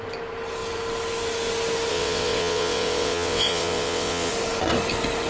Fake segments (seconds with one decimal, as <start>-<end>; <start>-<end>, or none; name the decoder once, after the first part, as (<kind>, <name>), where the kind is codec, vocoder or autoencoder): 1.9-4.3 (vocoder, WaveNeXt)